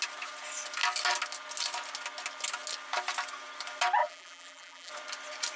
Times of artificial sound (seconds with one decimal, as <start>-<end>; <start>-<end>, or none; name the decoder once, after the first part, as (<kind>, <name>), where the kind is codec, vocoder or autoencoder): 4.0-4.9 (vocoder, BigVGAN v2)